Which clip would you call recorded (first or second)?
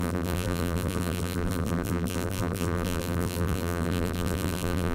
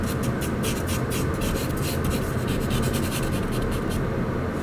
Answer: second